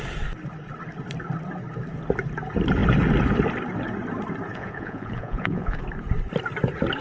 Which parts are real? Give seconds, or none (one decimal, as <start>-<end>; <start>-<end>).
0.0-4.5; 5.8-7.0